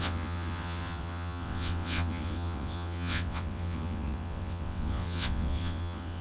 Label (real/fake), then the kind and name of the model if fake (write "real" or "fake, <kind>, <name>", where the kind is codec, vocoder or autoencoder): fake, vocoder, WaveNeXt